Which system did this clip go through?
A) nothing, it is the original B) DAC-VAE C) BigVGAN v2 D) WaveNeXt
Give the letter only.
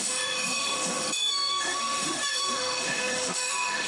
B